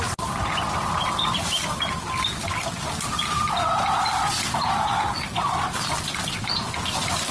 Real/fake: fake